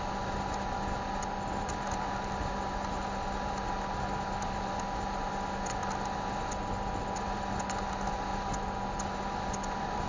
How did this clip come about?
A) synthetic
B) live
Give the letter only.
B